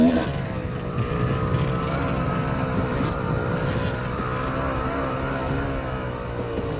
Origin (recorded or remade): recorded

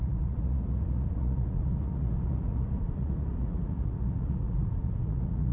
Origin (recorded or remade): remade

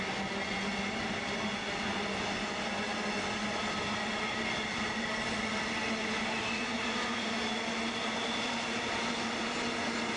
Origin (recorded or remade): recorded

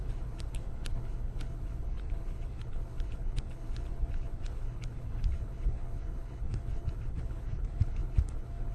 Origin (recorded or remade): remade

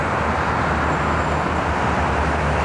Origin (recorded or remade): recorded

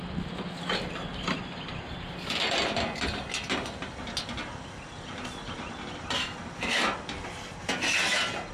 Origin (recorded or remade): recorded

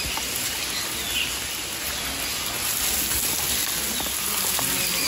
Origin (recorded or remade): recorded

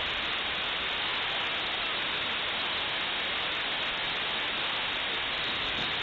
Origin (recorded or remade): recorded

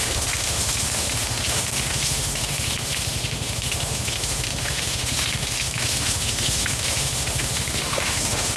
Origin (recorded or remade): remade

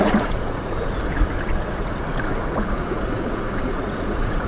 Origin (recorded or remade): remade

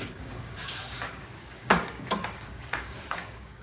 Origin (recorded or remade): remade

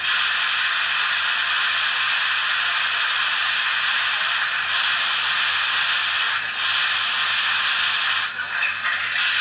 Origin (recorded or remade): recorded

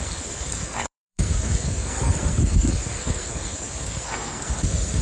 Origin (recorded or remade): remade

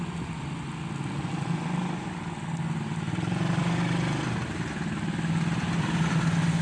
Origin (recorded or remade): recorded